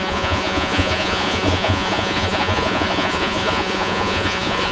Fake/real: fake